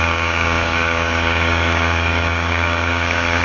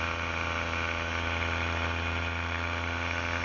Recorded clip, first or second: second